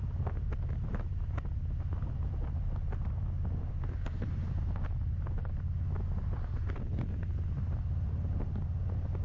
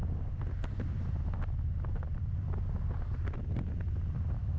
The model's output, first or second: second